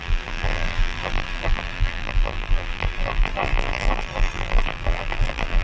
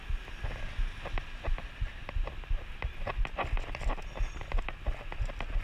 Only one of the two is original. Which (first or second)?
second